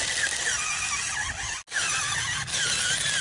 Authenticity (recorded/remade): recorded